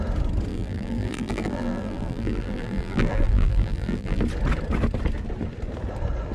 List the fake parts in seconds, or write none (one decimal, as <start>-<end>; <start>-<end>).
0.5-4.2